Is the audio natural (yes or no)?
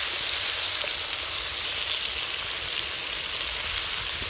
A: yes